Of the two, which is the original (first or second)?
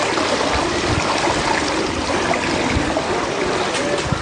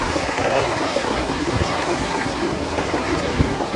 first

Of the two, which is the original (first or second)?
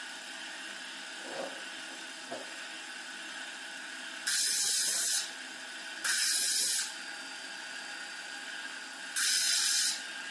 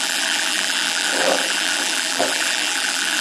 first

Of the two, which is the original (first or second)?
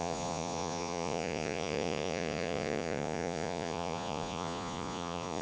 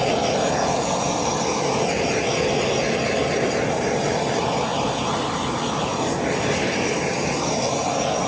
second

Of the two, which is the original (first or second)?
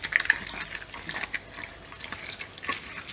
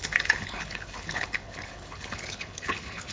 first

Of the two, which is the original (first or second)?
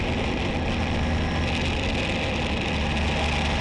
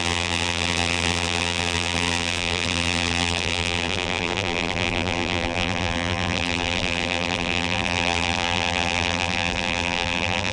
first